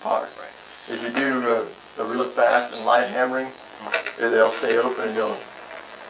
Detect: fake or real fake